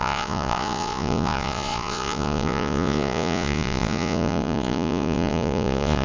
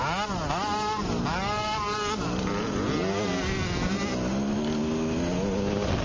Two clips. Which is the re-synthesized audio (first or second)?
first